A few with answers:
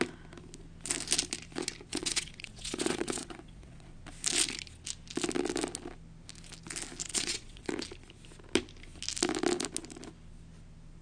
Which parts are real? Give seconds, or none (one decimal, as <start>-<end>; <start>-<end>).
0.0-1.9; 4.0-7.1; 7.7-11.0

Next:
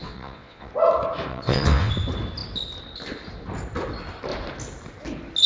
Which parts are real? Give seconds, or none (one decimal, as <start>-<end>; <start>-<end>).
0.7-1.3; 1.9-5.5

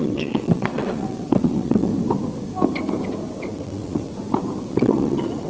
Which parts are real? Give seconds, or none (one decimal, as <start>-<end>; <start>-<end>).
1.9-3.5; 4.1-4.6

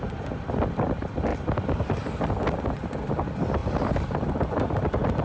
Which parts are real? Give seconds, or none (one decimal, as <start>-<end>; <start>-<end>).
0.0-5.2